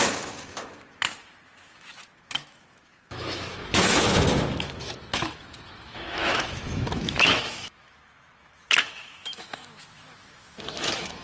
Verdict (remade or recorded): remade